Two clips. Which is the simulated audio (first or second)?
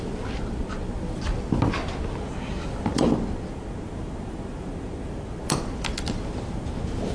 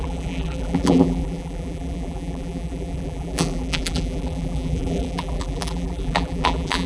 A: second